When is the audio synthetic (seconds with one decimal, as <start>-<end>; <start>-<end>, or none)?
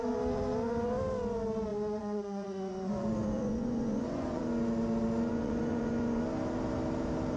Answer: 1.7-4.4; 5.3-6.2